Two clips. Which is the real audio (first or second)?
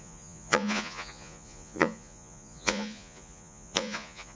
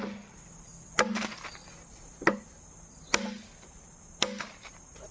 second